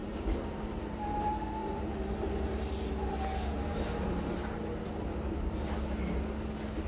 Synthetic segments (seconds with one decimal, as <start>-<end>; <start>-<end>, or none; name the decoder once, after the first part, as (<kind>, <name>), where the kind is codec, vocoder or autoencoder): 0.0-1.0 (vocoder, BigVGAN v2); 1.6-2.6